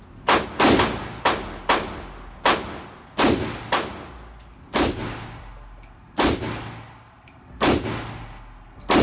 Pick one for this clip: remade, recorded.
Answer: recorded